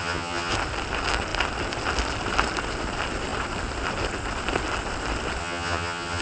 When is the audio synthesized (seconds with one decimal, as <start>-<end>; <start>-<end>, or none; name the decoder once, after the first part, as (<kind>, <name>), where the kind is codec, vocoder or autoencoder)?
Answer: 0.0-0.5 (vocoder, HiFi-GAN); 5.4-6.2